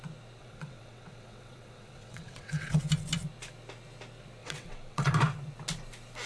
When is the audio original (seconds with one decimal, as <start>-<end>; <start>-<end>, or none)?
0.0-0.4; 2.9-4.4; 5.1-6.3